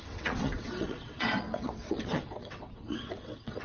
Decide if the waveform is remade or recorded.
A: remade